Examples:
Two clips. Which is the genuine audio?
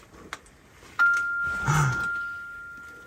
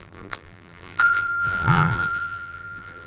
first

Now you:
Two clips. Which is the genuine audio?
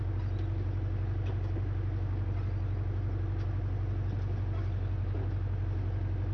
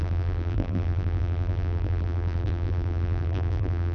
first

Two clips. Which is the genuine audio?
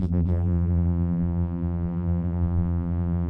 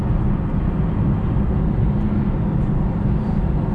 second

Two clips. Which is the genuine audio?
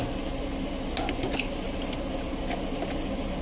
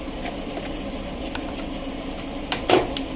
first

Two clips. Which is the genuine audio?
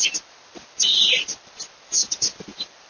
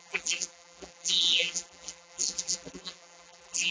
first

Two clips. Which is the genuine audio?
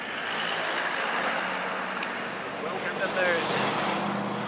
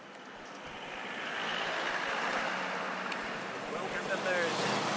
first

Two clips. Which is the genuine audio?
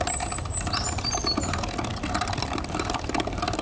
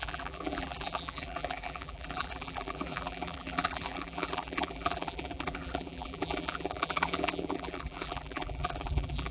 first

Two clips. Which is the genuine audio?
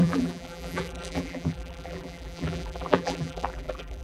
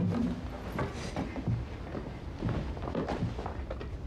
second